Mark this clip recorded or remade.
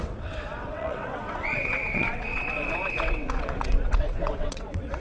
remade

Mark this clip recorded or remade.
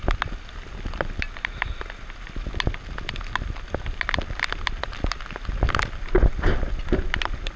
recorded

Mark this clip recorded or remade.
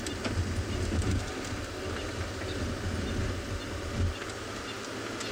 recorded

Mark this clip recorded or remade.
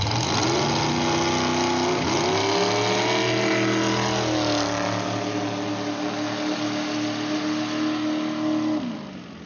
recorded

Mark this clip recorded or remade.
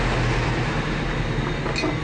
recorded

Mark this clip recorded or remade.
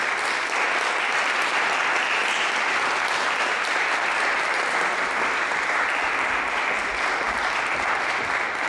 recorded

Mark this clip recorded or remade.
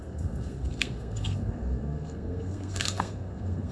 remade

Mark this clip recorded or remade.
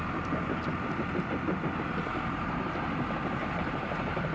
recorded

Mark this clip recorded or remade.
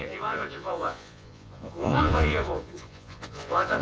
remade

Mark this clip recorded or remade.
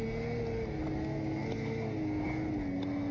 recorded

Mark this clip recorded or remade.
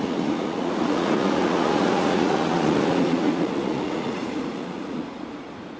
remade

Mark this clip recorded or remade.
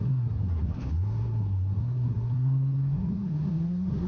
remade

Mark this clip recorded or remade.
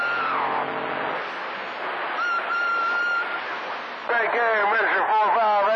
recorded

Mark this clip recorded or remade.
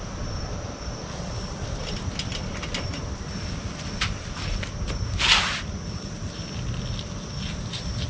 recorded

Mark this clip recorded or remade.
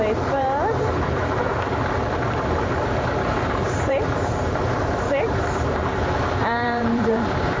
remade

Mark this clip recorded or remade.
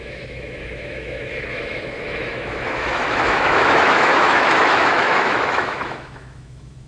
remade